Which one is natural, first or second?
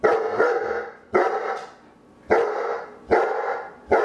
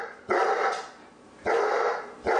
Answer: first